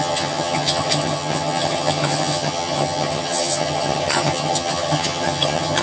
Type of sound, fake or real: fake